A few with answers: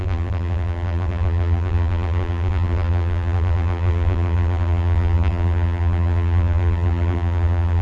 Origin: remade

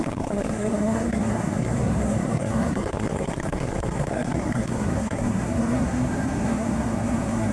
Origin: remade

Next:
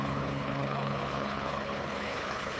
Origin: remade